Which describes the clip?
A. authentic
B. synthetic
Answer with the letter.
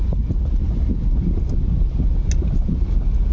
A